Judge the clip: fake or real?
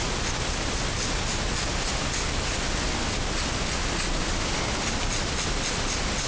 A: real